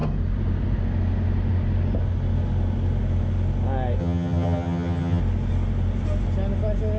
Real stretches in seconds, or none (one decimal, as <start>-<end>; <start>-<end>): 0.0-4.0; 5.2-7.0